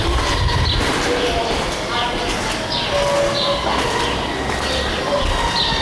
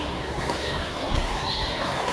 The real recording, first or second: first